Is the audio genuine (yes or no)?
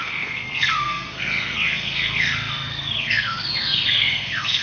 no